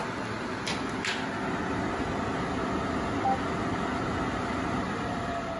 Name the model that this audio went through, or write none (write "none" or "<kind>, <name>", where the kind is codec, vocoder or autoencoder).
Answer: none